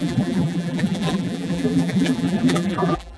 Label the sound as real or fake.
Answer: fake